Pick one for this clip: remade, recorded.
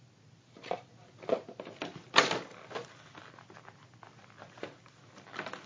recorded